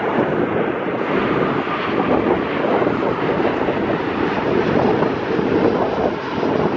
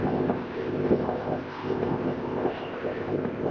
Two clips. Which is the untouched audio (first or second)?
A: first